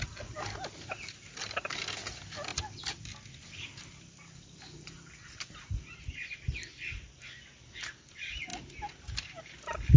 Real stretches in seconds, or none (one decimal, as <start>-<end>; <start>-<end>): 0.0-10.0